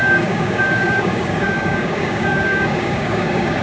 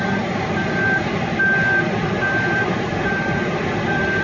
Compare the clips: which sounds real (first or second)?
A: second